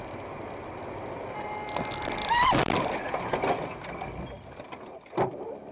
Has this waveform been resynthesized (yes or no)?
no